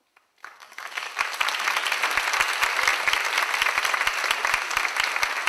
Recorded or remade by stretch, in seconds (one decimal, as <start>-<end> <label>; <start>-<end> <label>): 0.0-0.4 recorded; 0.4-1.1 remade; 1.1-5.5 recorded

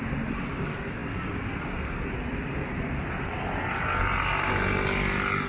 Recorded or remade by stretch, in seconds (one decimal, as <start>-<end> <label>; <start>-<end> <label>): 0.0-5.5 recorded

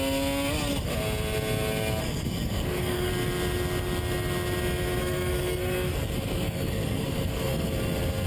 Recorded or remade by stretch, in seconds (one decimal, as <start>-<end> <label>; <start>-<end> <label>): 0.0-2.0 recorded; 2.0-3.1 remade; 3.1-5.0 recorded; 5.0-7.7 remade; 7.7-8.3 recorded

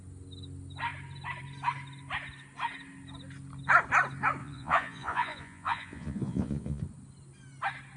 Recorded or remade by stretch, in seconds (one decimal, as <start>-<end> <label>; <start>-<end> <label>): 0.0-4.4 recorded; 4.4-6.8 remade; 6.8-8.0 recorded

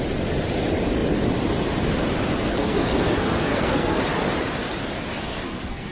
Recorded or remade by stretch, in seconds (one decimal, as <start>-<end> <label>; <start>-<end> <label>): 0.0-2.5 recorded; 2.5-4.0 remade; 4.0-5.3 recorded; 5.3-5.9 remade